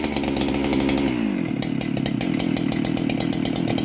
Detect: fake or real real